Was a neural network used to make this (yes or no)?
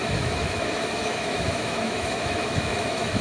yes